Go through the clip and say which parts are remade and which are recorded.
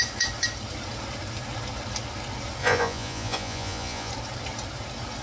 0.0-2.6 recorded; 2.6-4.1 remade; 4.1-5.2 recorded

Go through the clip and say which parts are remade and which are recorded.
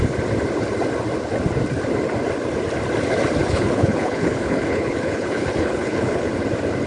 0.0-3.4 recorded; 3.4-6.3 remade; 6.3-6.9 recorded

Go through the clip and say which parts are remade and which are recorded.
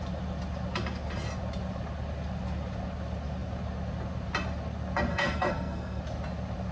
0.0-5.1 recorded; 5.1-6.0 remade; 6.0-6.7 recorded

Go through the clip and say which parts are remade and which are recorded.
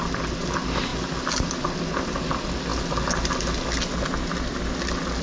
0.0-5.2 recorded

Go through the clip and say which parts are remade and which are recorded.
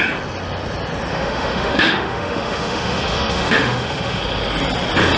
0.0-1.1 recorded; 1.1-4.2 remade; 4.2-5.2 recorded